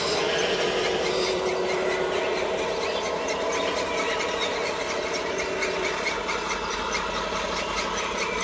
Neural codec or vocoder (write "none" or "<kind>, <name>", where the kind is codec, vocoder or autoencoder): none